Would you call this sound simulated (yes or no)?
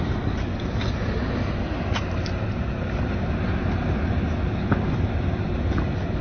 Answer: no